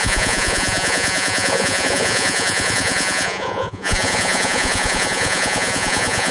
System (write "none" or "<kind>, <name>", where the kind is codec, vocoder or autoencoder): vocoder, Vocos